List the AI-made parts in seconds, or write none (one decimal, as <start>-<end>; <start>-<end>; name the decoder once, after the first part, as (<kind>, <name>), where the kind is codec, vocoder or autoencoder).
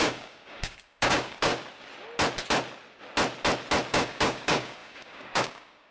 0.0-1.5 (codec, DAC); 3.9-5.9